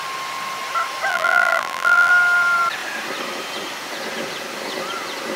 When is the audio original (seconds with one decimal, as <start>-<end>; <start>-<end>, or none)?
0.0-1.1; 2.1-5.4